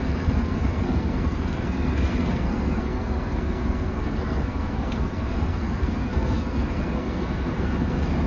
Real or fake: fake